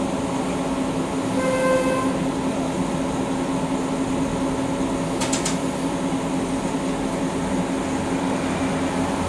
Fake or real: real